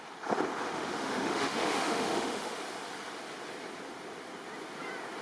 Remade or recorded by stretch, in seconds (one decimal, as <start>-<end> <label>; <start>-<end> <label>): 0.0-0.6 recorded; 0.6-2.6 remade; 2.6-5.2 recorded